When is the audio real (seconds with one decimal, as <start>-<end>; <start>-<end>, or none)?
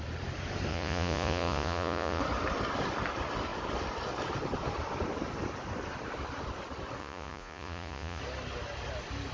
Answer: 0.0-0.7; 2.2-7.0; 8.2-9.3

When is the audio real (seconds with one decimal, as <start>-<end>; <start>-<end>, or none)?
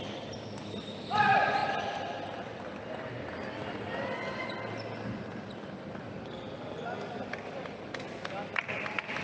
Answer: 0.0-9.2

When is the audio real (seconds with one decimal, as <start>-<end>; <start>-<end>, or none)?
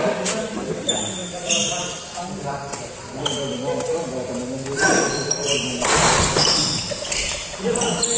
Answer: 0.0-8.2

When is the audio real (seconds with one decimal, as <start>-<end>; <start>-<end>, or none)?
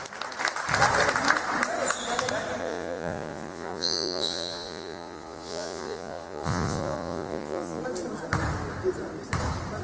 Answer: 0.0-2.6; 7.8-9.8